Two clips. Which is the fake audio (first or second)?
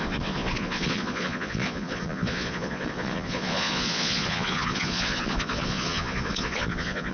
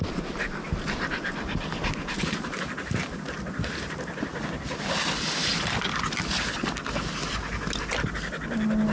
first